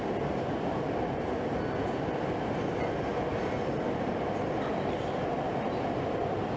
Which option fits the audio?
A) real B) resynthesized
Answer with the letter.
A